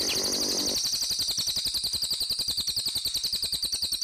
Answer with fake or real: real